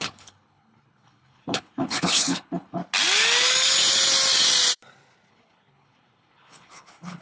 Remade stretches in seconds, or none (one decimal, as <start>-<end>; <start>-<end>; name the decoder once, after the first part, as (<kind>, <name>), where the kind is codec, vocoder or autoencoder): 0.0-2.8 (codec, HILCodec); 5.3-7.2